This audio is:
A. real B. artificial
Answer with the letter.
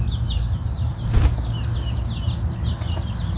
A